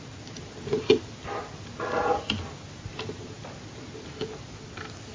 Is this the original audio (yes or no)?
yes